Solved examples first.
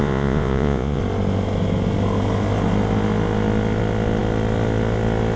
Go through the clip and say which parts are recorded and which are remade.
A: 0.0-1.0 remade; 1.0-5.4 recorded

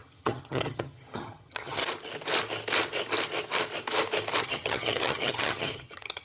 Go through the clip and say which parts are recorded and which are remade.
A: 0.0-1.8 remade; 1.8-4.4 recorded; 4.4-6.2 remade

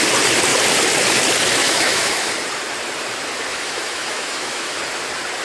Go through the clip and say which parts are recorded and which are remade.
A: 0.0-1.6 recorded; 1.6-2.3 remade; 2.3-3.5 recorded; 3.5-4.8 remade; 4.8-5.4 recorded

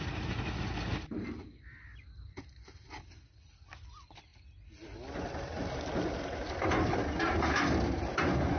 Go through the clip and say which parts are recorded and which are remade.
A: 0.0-8.6 recorded

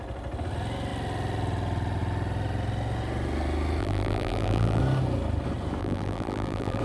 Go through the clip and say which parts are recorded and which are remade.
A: 0.0-3.8 recorded; 3.8-4.8 remade; 4.8-5.8 recorded; 5.8-6.8 remade

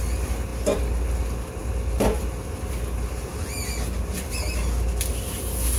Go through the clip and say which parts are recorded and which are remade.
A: 0.0-5.8 recorded